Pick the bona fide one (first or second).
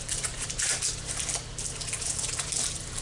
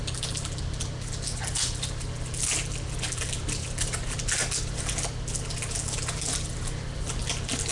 second